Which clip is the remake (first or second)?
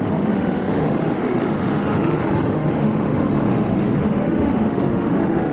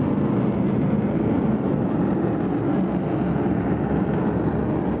first